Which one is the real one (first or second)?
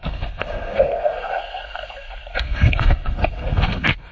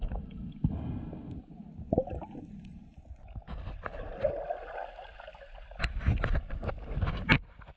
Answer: second